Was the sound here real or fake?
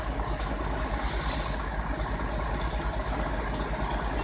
real